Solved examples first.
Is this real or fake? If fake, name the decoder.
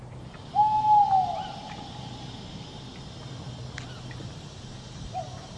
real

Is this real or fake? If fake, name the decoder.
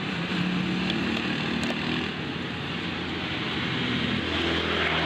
real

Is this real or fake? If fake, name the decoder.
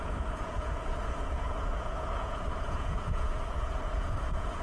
fake, vocoder, Vocos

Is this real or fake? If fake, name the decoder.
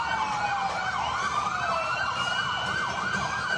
real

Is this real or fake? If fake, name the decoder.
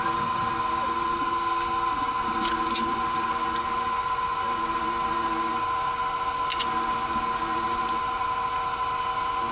real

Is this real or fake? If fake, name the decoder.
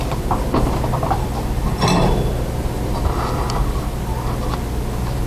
fake, vocoder, BigVGAN v2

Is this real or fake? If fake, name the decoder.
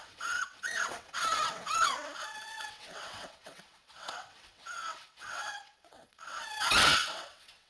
fake, vocoder, WaveNeXt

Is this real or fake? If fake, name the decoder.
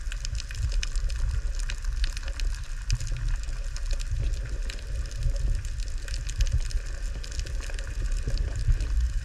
real